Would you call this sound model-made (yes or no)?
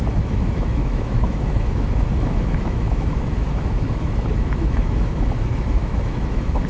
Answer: yes